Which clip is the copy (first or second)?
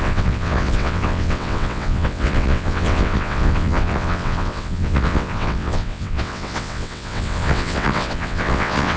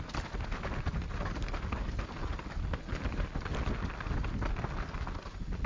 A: first